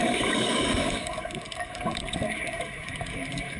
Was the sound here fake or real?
fake